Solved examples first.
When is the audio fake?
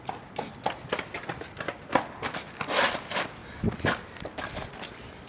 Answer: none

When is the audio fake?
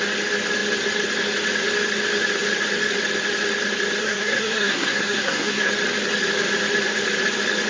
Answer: 4.0-5.7 (codec, SNAC)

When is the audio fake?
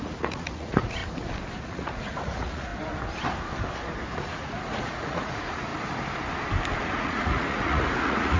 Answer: 0.0-1.0 (vocoder, Vocos); 1.6-2.7; 4.2-5.7; 6.8-8.4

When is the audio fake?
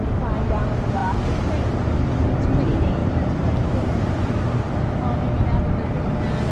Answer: 3.0-4.1 (vocoder, BigVGAN v2)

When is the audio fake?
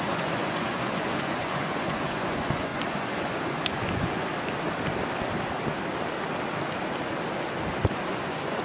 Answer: 0.0-4.3 (vocoder, Vocos); 8.1-8.6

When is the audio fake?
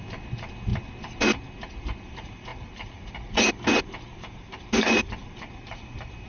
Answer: 4.1-6.3 (vocoder, BigVGAN v2)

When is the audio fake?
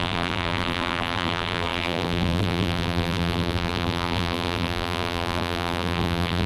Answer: 0.0-6.5 (vocoder, BigVGAN v2)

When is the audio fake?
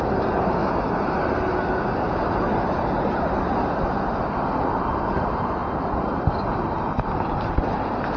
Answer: 5.6-8.2 (vocoder, BigVGAN v2)